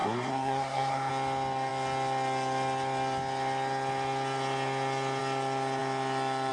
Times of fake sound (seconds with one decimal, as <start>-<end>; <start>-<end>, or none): 0.0-1.1